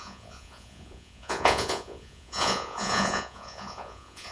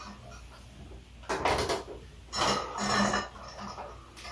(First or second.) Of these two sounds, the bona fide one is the second